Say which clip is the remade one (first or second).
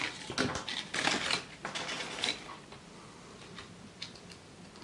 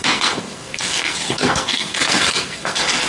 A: second